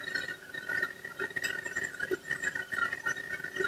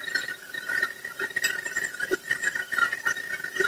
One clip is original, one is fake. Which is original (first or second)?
first